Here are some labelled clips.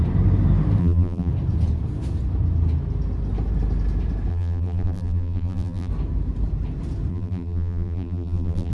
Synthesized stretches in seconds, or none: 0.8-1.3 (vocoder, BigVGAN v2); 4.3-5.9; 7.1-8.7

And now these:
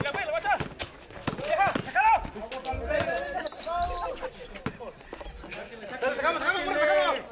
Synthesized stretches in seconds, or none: none

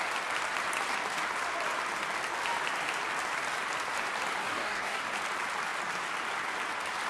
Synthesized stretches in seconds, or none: 4.4-5.0 (codec, DAC)

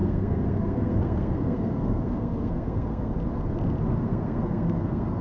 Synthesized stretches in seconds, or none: 0.0-3.1 (codec, SNAC); 3.9-5.2